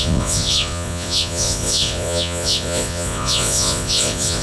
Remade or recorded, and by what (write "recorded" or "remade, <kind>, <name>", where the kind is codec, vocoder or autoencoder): remade, vocoder, Vocos